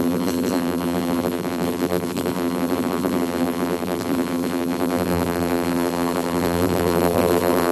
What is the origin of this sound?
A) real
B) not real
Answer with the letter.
B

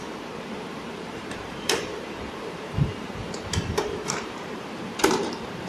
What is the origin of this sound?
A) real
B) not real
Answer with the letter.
B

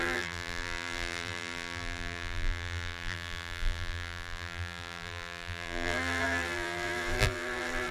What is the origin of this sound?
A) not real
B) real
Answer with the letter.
A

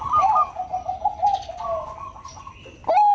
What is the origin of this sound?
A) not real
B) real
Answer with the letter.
B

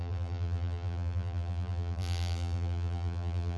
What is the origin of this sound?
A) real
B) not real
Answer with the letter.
B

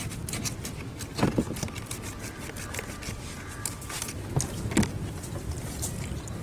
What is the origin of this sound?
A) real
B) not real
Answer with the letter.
A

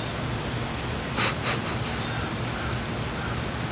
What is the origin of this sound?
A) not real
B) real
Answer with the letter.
B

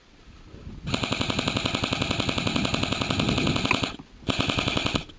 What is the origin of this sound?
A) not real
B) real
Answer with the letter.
B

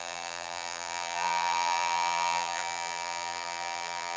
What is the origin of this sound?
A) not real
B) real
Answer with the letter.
A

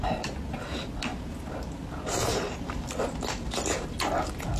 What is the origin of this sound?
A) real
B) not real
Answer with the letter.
A